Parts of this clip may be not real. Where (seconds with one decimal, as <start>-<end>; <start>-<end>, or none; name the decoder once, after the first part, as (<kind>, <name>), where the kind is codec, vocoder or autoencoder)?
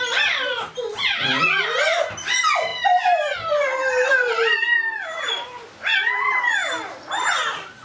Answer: none